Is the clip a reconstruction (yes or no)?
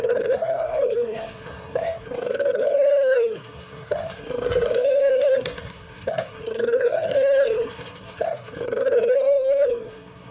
yes